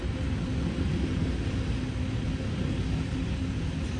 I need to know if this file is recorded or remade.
recorded